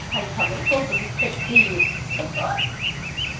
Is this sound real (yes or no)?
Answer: yes